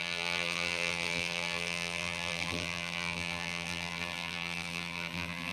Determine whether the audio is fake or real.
fake